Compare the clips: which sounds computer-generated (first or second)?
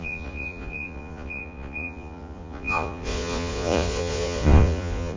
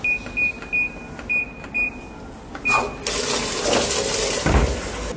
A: first